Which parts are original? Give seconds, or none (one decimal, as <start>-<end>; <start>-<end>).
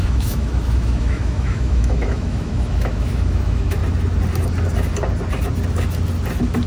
3.8-6.7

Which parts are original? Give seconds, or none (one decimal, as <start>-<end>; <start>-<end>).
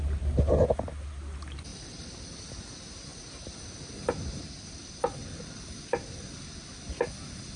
0.0-1.7; 2.4-3.1; 3.6-4.8; 5.6-7.6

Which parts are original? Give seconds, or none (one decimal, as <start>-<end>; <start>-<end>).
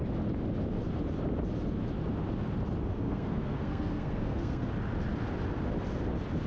0.0-2.9; 4.7-6.5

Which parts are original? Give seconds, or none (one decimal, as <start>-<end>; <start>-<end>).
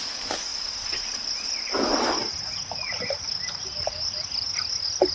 0.0-5.1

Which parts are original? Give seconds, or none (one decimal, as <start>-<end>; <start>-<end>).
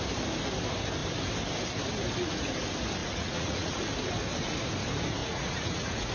0.0-3.0; 3.8-5.2